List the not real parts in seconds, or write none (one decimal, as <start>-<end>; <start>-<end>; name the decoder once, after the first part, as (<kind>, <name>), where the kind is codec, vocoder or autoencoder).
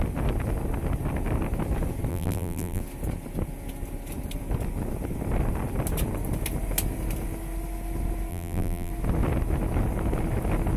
2.1-2.8 (vocoder, BigVGAN v2); 8.3-8.9